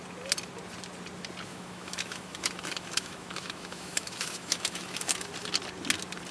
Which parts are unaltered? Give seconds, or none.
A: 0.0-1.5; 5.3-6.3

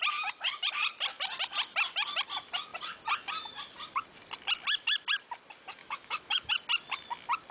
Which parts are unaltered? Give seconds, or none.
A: 0.0-5.8; 6.5-7.5

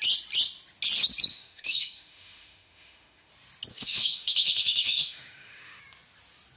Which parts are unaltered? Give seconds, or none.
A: 0.0-1.3; 3.3-3.7; 5.8-6.6